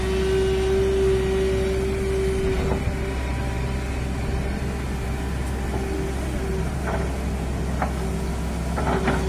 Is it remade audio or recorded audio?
recorded